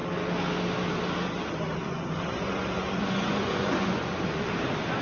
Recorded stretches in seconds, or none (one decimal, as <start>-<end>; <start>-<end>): 0.0-1.8; 4.5-5.0